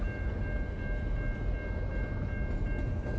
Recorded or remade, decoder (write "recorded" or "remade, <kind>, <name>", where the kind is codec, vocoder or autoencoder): recorded